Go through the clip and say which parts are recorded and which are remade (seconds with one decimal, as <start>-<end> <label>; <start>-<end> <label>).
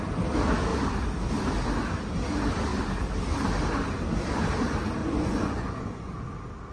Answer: 0.0-5.0 recorded; 5.0-6.1 remade; 6.1-6.7 recorded